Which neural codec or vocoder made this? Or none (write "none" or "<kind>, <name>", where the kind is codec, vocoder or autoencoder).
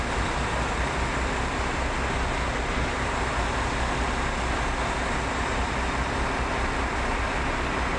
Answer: none